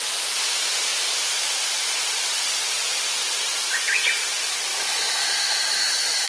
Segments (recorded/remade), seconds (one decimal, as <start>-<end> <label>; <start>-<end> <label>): 0.0-4.7 recorded; 4.7-6.3 remade

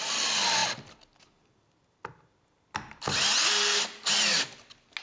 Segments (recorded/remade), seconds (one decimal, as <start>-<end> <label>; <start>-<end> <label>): 0.0-5.0 recorded

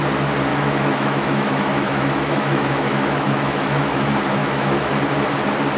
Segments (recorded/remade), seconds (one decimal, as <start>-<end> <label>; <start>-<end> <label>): 0.0-0.5 recorded; 0.5-4.0 remade; 4.0-4.4 recorded; 4.4-4.9 remade; 4.9-5.8 recorded

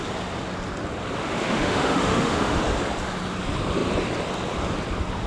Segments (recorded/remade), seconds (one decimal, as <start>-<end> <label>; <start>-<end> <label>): 0.0-1.2 recorded; 1.2-2.6 remade; 2.6-5.3 recorded

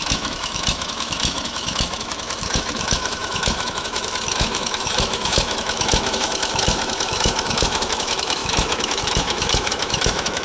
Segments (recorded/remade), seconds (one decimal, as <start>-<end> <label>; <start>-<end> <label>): 0.0-10.4 remade

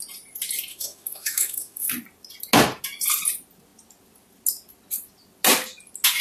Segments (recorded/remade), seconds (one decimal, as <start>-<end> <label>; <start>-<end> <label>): 0.0-0.7 recorded; 0.7-1.9 remade; 1.9-6.2 recorded